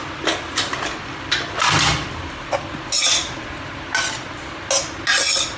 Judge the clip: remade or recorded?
recorded